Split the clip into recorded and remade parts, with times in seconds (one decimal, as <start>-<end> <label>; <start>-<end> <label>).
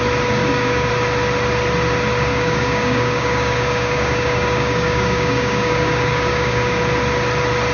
0.0-0.4 recorded; 0.4-0.9 remade; 0.9-2.3 recorded; 2.3-6.8 remade; 6.8-7.7 recorded